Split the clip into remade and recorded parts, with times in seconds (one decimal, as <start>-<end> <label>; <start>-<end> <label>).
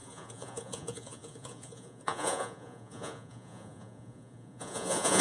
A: 0.0-5.2 remade